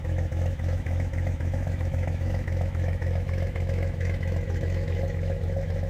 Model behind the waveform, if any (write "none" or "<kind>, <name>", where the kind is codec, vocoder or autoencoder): autoencoder, DAC-VAE